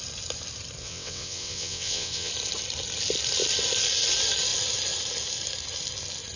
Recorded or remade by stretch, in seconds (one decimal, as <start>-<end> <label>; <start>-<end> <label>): 0.0-0.8 recorded; 0.8-2.3 remade; 2.3-6.4 recorded